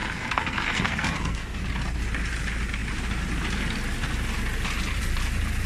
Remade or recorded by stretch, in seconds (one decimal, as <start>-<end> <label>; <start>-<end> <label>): 0.0-1.6 remade; 1.6-5.7 recorded